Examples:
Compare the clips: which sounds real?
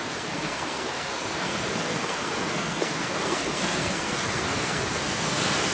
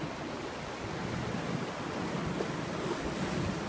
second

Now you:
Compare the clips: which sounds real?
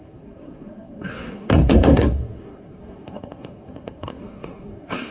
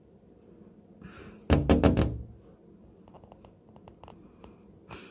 second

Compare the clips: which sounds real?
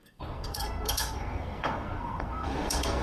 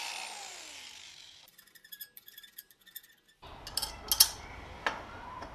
second